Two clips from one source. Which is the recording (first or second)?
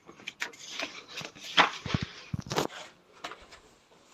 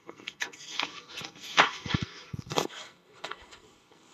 first